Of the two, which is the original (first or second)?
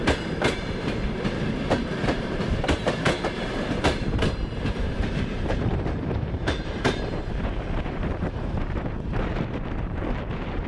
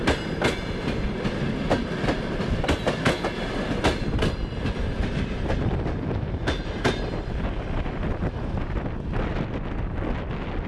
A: second